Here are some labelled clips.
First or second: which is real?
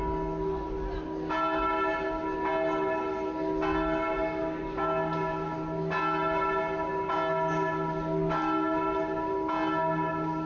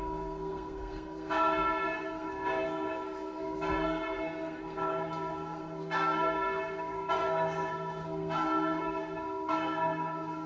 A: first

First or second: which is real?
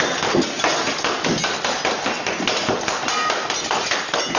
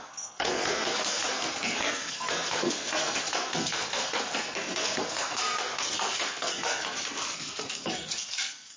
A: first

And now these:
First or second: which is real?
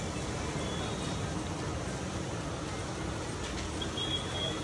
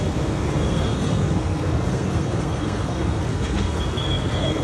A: first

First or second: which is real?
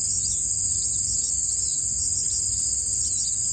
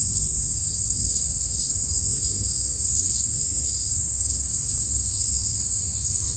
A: first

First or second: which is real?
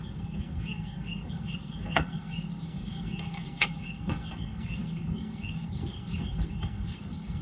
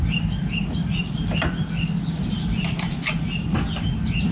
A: second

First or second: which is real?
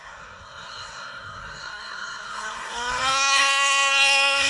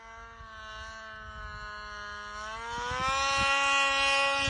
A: second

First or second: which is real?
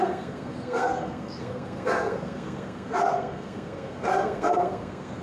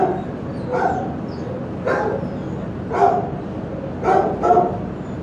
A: second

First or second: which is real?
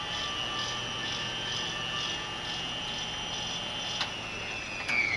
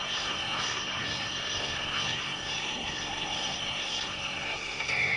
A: first